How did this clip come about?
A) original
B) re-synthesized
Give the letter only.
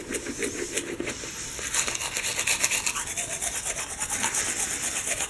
A